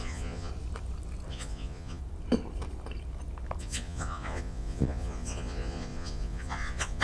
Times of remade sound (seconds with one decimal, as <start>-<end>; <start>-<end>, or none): 0.0-0.5; 1.3-2.0; 3.6-7.0